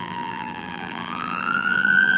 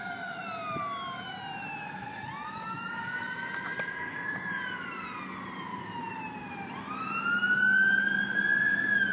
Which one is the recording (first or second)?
second